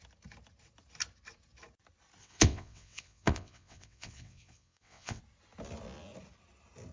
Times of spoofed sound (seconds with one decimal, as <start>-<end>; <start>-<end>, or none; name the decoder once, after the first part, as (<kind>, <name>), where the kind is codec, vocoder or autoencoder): 2.2-5.2 (vocoder, WaveNeXt)